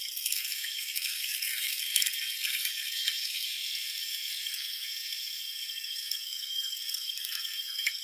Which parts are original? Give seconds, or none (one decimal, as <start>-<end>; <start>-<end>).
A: none